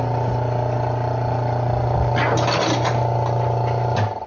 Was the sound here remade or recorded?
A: recorded